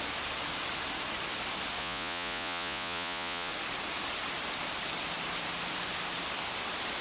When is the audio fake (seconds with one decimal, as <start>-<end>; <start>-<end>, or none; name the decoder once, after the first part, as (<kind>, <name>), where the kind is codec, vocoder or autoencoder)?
1.8-3.5 (vocoder, Vocos)